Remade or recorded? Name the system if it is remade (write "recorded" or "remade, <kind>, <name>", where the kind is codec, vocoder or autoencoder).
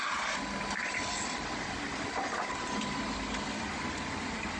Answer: recorded